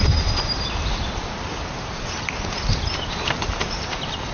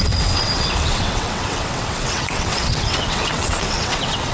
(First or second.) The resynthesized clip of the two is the second